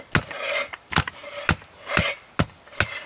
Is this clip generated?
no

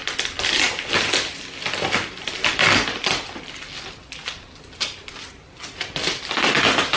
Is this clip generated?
no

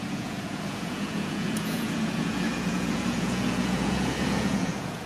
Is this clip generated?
yes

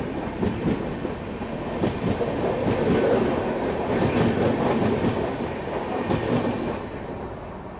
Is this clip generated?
no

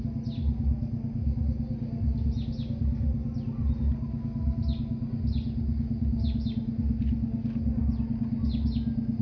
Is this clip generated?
no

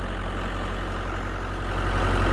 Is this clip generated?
no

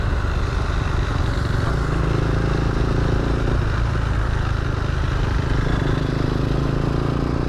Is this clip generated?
no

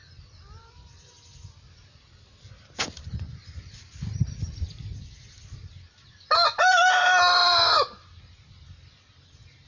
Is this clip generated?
no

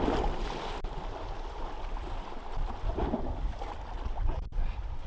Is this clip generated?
no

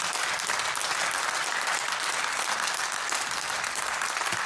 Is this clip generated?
no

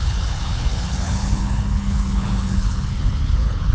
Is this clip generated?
yes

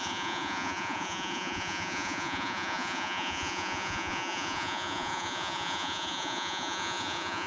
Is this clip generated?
yes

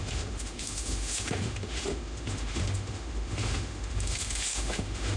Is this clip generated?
yes